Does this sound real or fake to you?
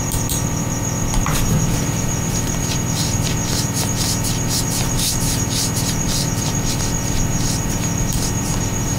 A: fake